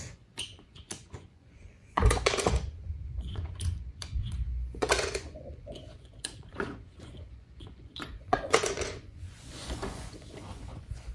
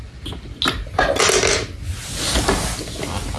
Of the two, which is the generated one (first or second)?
first